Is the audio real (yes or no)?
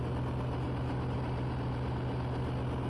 yes